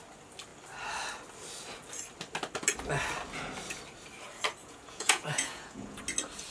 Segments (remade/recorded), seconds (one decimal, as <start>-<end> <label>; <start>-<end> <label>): 0.0-4.6 recorded; 4.6-6.0 remade; 6.0-6.5 recorded